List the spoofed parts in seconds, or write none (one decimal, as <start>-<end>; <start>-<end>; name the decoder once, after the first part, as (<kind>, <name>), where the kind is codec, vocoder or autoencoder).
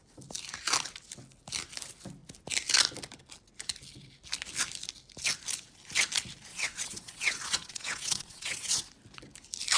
6.5-8.8 (vocoder, WaveNeXt)